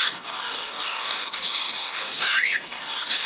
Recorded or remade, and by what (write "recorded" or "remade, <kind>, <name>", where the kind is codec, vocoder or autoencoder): remade, codec, DAC